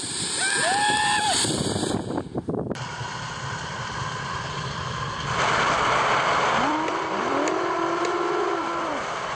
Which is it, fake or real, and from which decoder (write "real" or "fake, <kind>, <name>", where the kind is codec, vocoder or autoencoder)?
fake, vocoder, BigVGAN v2